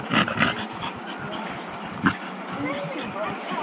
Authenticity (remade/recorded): recorded